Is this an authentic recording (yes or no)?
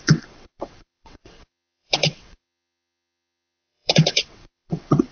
no